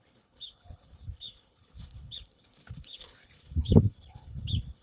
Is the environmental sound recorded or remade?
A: remade